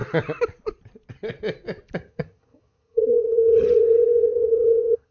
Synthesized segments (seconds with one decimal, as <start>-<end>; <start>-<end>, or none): 2.0-5.1